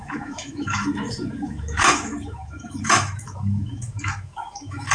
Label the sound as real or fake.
fake